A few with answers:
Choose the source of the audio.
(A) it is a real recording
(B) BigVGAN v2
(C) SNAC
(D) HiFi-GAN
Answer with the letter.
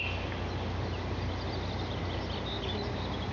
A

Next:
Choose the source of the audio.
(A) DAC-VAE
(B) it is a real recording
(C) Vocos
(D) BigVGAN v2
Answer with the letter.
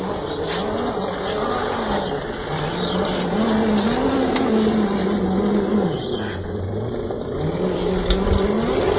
B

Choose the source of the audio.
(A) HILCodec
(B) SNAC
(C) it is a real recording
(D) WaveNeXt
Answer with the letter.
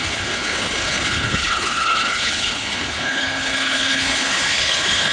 A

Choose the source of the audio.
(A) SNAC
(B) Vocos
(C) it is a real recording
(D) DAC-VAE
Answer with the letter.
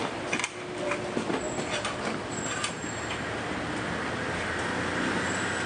C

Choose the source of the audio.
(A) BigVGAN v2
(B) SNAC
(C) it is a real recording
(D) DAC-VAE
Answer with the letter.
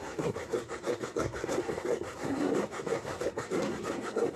B